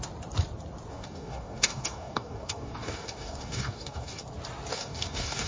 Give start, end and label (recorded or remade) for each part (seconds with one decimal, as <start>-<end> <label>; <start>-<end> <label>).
0.0-0.9 recorded; 0.9-4.2 remade; 4.2-4.7 recorded; 4.7-5.5 remade